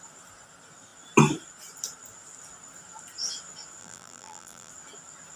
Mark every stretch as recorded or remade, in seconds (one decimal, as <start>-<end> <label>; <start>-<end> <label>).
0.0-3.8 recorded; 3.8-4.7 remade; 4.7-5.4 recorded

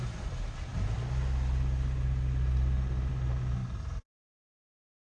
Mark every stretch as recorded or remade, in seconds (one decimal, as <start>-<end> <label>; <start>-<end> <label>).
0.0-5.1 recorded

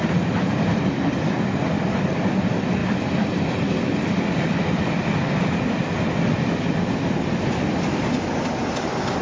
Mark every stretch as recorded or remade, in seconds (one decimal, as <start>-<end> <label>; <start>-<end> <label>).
0.0-9.2 remade

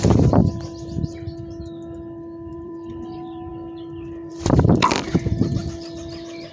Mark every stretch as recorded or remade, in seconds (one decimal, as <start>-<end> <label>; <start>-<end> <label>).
0.0-0.4 remade; 0.4-2.5 recorded; 2.5-3.5 remade; 3.5-4.3 recorded; 4.3-6.5 remade